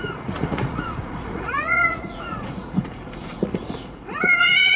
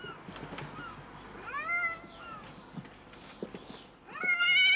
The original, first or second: second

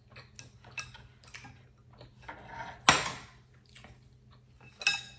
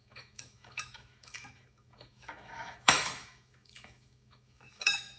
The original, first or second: first